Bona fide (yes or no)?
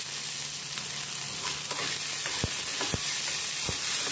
yes